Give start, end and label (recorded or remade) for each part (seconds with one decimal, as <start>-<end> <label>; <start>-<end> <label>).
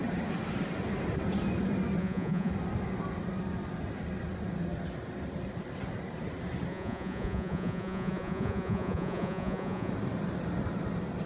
0.0-2.0 recorded; 2.0-2.5 remade; 2.5-6.7 recorded; 6.7-9.9 remade; 9.9-11.3 recorded